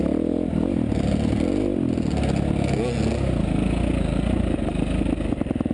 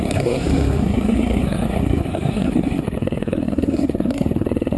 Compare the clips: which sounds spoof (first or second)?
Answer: second